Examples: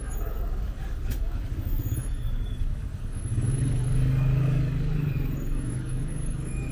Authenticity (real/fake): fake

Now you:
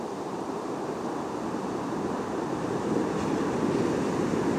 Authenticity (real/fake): real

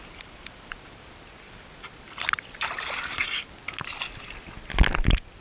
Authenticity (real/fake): real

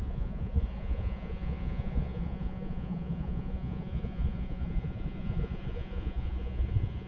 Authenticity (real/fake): fake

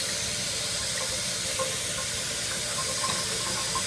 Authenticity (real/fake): real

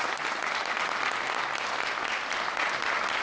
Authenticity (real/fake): real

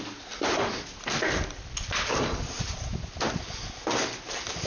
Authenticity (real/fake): real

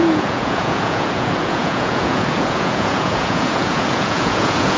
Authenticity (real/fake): fake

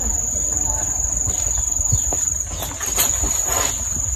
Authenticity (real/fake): real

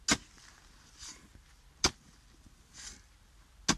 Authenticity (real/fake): real